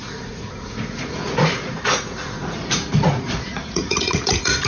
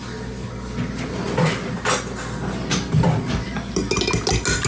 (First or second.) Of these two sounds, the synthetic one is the first